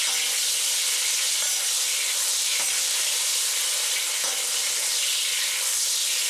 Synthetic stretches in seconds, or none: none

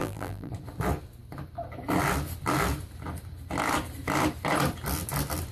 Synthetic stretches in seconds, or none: 0.0-0.5 (vocoder, BigVGAN v2)

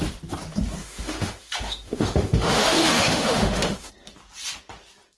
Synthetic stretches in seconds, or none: 0.8-3.9 (autoencoder, DAC-VAE)